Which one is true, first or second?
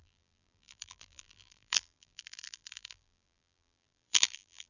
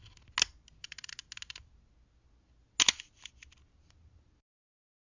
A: second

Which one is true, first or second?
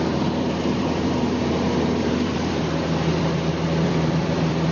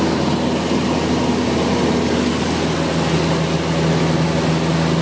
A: second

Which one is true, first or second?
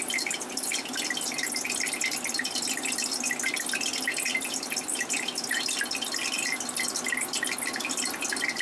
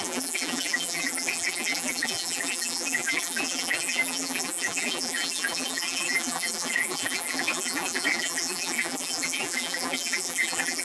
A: first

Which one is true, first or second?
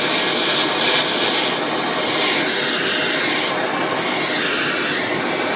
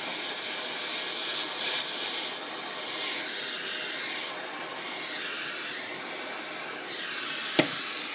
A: first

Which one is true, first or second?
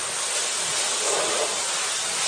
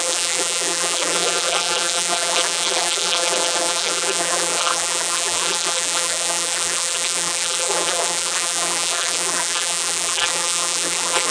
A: first